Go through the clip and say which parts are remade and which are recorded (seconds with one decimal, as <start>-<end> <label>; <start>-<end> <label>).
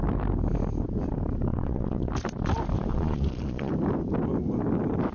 0.0-1.5 recorded; 1.5-2.1 remade; 2.1-2.9 recorded; 2.9-3.7 remade; 3.7-5.1 recorded